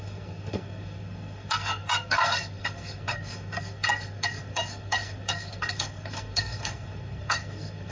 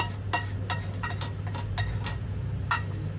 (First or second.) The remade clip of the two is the first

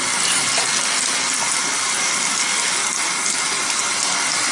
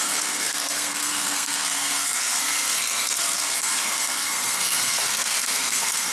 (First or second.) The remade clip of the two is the second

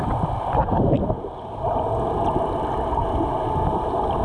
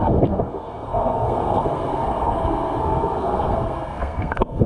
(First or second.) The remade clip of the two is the second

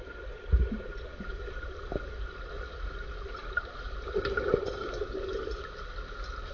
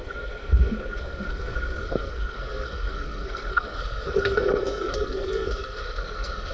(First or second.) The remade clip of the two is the second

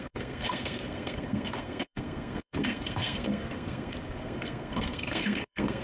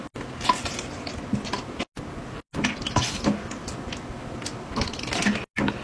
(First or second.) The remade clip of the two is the first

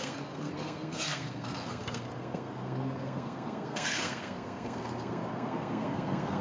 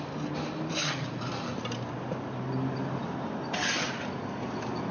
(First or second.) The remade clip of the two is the first